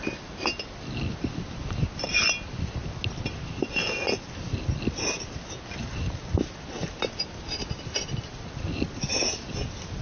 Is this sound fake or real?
real